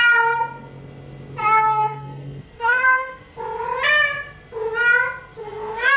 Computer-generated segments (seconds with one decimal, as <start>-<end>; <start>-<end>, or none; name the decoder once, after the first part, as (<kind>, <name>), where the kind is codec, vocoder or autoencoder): 1.4-3.4 (codec, SNAC); 5.4-6.0